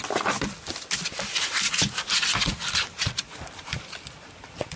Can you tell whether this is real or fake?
real